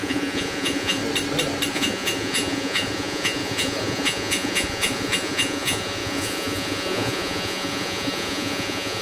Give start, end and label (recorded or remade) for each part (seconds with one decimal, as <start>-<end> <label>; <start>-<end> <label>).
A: 0.0-1.0 remade; 1.0-1.7 recorded; 1.7-9.0 remade